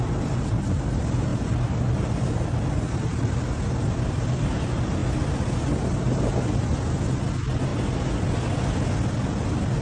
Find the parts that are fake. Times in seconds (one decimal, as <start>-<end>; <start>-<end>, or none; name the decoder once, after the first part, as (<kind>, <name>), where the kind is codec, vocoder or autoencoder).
none